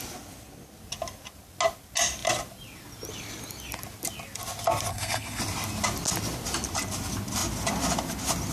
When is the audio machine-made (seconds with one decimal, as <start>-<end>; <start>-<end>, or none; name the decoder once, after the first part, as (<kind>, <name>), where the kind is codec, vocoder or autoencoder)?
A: 4.9-5.4 (codec, SNAC)

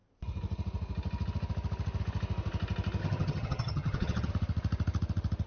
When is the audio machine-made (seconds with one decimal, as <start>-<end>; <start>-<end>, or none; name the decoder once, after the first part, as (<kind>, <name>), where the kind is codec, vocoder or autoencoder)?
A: 3.0-4.3 (vocoder, HiFi-GAN)

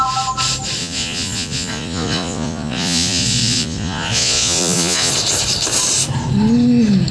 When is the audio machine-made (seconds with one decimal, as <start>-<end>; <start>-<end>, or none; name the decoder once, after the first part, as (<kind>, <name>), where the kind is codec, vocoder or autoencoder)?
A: 0.8-5.1 (vocoder, Vocos)

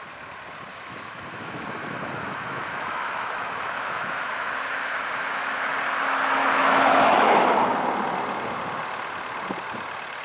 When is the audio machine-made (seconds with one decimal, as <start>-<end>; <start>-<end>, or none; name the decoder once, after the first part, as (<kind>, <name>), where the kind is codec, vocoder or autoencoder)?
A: 0.7-5.7 (autoencoder, DAC-VAE); 6.4-7.4